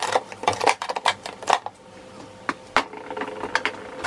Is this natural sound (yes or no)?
yes